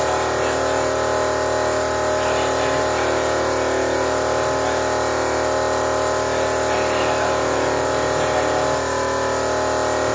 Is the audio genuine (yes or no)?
yes